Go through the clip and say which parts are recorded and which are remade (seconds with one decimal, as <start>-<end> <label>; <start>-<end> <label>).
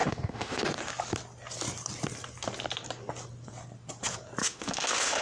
0.0-0.6 remade; 0.6-4.4 recorded; 4.4-5.2 remade